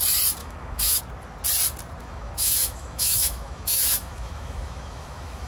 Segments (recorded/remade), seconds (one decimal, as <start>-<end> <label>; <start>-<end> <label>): 0.0-0.4 recorded; 0.4-1.0 remade; 1.0-2.0 recorded; 2.0-5.5 remade

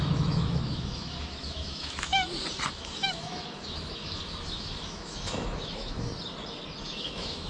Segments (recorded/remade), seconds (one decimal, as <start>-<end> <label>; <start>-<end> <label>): 0.0-2.1 remade; 2.1-2.7 recorded; 2.7-6.1 remade; 6.1-6.8 recorded; 6.8-7.5 remade

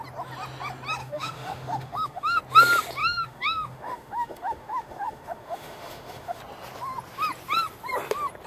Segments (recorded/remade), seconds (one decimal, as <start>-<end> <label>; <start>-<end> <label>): 0.0-1.0 recorded; 1.0-2.4 remade; 2.4-3.0 recorded; 3.0-6.4 remade; 6.4-8.5 recorded

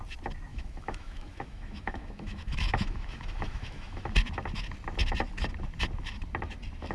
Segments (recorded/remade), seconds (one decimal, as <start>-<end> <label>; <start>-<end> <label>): 0.0-0.5 recorded; 0.5-4.1 remade; 4.1-6.9 recorded

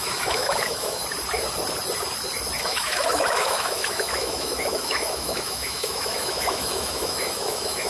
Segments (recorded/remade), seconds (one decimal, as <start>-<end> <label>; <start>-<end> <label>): 0.0-1.0 remade; 1.0-2.6 recorded; 2.6-7.9 remade